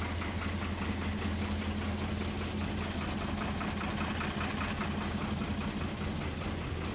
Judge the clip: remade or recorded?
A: recorded